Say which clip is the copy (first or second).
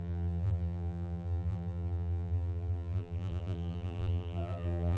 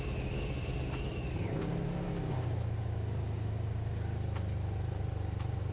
first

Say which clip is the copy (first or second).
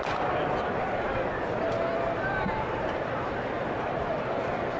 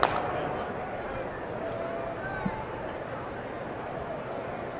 first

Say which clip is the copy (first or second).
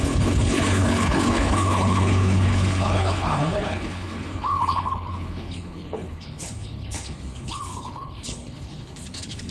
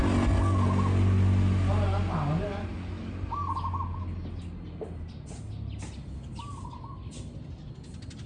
first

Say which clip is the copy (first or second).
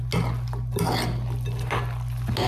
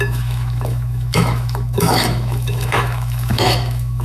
second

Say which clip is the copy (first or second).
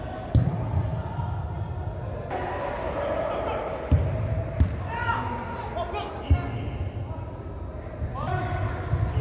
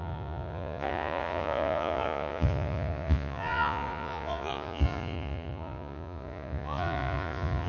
second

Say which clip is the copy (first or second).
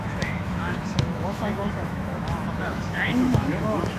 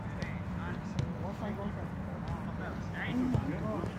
first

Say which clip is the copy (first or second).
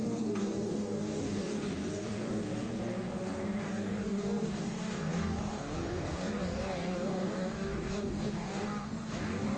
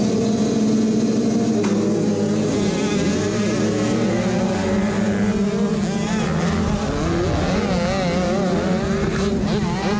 first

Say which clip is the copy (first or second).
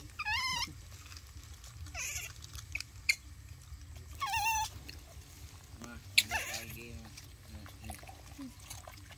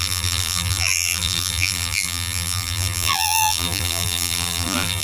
second